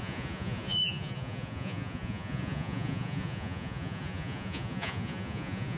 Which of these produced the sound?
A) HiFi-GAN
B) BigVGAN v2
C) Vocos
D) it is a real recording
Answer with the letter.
C